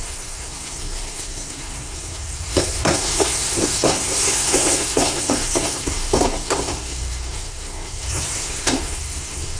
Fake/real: fake